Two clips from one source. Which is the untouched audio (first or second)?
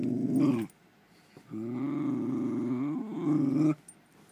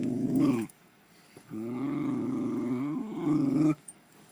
first